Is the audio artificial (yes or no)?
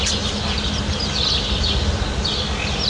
no